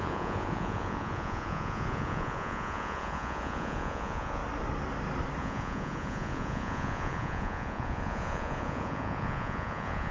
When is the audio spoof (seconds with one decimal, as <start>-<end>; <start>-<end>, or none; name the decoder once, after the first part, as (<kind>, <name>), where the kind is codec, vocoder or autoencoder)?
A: 0.0-4.4 (vocoder, Vocos); 5.4-10.1